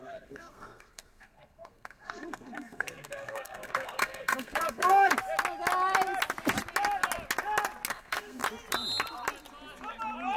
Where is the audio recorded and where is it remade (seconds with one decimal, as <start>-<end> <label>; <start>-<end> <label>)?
0.0-5.1 remade; 5.1-7.9 recorded; 7.9-8.4 remade; 8.4-10.4 recorded

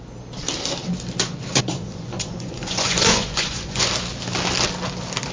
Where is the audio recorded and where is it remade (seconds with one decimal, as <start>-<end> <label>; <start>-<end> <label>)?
0.0-1.3 recorded; 1.3-3.9 remade; 3.9-5.3 recorded

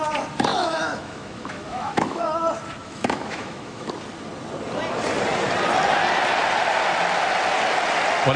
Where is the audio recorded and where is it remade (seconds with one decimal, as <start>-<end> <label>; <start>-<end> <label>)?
0.0-0.5 recorded; 0.5-2.2 remade; 2.2-2.8 recorded; 2.8-3.9 remade; 3.9-8.4 recorded

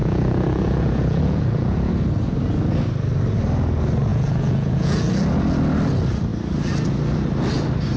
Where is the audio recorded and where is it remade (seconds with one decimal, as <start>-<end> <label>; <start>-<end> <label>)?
0.0-1.9 remade; 1.9-4.1 recorded; 4.1-5.1 remade; 5.1-8.0 recorded

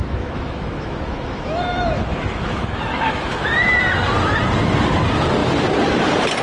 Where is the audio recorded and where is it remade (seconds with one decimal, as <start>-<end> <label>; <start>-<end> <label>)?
0.0-3.8 remade; 3.8-6.4 recorded

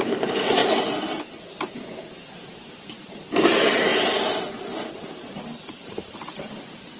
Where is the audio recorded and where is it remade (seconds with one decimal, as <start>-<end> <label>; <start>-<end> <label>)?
0.0-0.6 remade; 0.6-1.5 recorded; 1.5-3.9 remade; 3.9-5.7 recorded; 5.7-7.0 remade

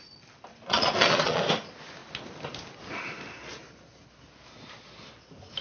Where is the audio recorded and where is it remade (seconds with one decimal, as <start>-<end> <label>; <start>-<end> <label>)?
0.0-0.5 recorded; 0.5-1.4 remade; 1.4-5.6 recorded

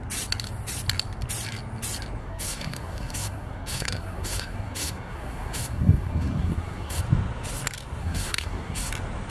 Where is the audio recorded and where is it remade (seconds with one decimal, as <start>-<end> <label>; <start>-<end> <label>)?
0.0-2.2 recorded; 2.2-7.0 remade; 7.0-8.0 recorded; 8.0-8.9 remade; 8.9-9.3 recorded